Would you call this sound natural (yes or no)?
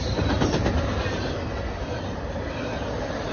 yes